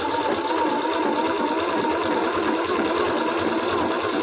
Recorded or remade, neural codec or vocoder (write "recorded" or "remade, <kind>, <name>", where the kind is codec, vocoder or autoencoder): remade, vocoder, BigVGAN v2